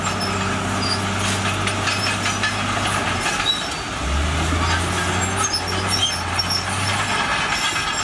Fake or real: real